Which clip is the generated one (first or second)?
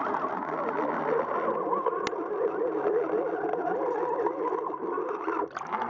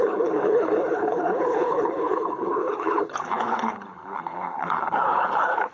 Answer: second